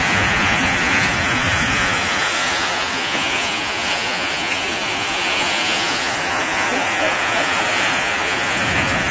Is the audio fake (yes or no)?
yes